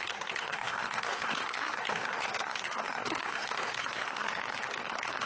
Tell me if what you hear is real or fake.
fake